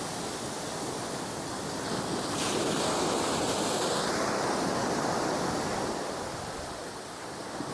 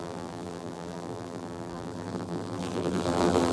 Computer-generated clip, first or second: second